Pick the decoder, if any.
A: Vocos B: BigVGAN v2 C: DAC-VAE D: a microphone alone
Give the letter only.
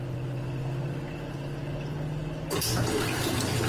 D